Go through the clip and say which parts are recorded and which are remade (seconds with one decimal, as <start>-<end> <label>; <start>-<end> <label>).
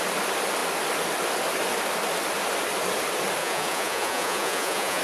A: 0.0-3.4 recorded; 3.4-5.0 remade